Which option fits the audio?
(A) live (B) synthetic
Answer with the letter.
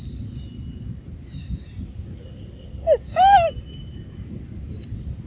A